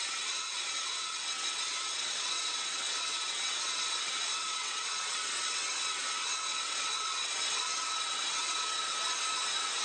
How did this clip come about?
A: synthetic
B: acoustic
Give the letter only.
A